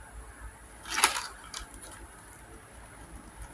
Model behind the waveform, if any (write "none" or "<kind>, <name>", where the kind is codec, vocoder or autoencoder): none